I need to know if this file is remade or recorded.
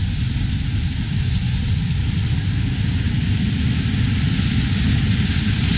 recorded